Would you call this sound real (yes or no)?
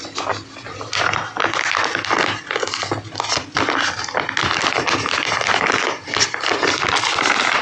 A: yes